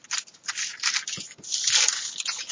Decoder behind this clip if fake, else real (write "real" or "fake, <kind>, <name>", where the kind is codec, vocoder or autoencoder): real